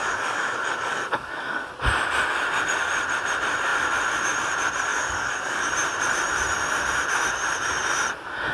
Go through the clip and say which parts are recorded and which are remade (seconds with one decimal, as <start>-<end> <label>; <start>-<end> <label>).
0.0-1.7 remade; 1.7-4.9 recorded; 4.9-5.7 remade; 5.7-8.5 recorded